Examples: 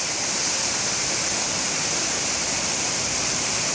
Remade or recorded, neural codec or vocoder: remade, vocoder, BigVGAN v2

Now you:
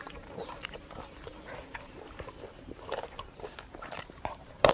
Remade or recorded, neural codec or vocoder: remade, vocoder, BigVGAN v2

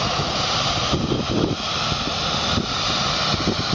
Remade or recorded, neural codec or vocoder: remade, vocoder, BigVGAN v2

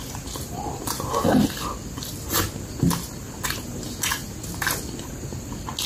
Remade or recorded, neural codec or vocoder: recorded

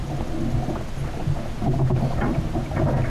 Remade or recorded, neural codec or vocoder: recorded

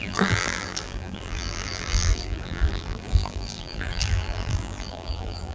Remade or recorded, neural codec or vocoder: remade, vocoder, BigVGAN v2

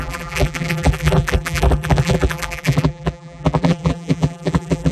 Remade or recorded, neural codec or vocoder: remade, vocoder, BigVGAN v2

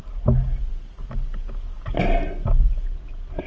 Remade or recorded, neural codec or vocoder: recorded